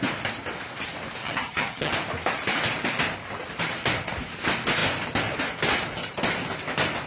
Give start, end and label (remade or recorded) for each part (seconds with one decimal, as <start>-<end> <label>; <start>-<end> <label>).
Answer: 0.0-1.2 recorded; 1.2-1.9 remade; 1.9-7.1 recorded